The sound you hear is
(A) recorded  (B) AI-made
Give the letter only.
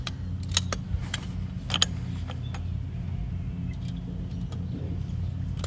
A